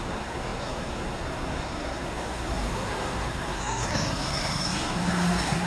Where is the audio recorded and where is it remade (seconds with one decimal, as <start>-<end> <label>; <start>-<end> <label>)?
0.0-5.7 remade